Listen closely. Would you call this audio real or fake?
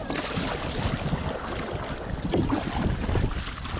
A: real